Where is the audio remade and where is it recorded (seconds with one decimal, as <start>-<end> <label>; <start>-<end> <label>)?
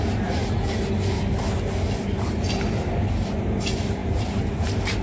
0.0-0.4 remade; 0.4-3.4 recorded; 3.4-5.0 remade